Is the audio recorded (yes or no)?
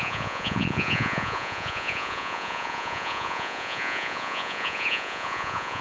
no